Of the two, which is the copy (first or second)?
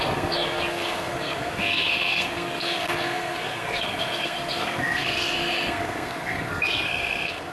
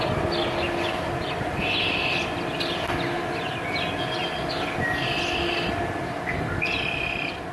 first